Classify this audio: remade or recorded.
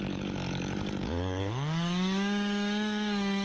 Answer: remade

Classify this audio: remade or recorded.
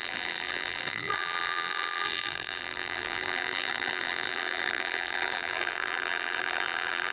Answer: remade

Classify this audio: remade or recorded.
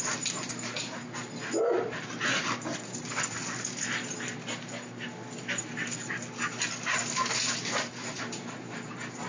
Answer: recorded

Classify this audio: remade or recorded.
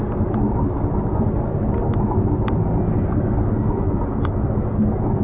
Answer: recorded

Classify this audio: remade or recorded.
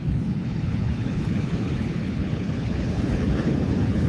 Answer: remade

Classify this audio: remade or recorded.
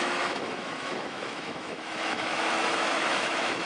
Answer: remade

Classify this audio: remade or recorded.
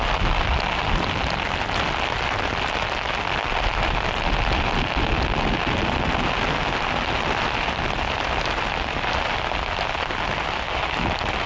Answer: recorded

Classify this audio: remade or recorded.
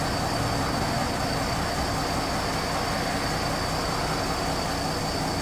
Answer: recorded